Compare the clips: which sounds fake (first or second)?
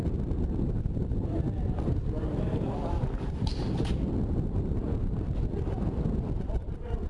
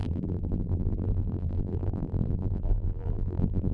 second